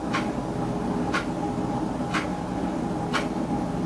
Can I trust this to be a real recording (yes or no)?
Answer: yes